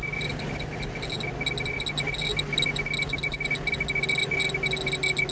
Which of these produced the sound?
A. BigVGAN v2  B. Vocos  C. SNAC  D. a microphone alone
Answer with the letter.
D